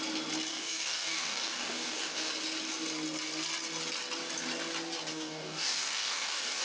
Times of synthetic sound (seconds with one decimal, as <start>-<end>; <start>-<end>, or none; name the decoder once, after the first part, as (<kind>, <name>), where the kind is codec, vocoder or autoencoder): 0.5-2.3 (codec, DAC); 5.1-6.6